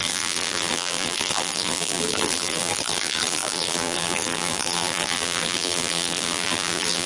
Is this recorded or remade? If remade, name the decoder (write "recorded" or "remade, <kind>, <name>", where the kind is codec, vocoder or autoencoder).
remade, vocoder, BigVGAN v2